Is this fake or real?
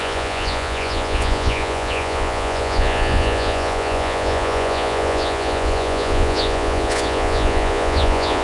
fake